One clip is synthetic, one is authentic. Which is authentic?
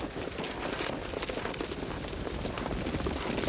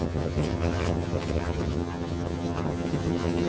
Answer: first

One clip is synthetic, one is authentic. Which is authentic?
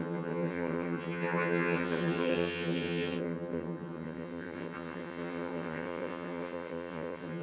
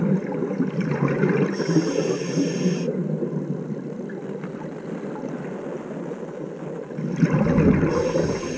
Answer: second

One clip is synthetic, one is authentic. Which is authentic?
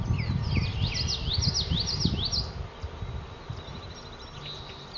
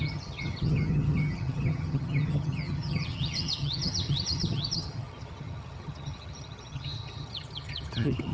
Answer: first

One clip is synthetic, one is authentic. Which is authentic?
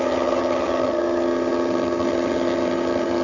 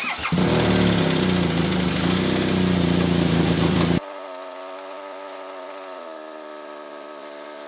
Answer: second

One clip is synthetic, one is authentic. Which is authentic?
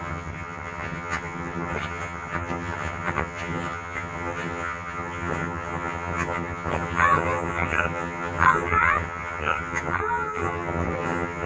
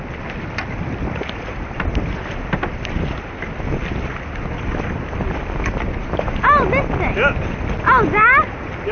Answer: second